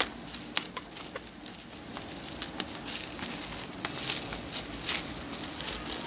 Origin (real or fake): real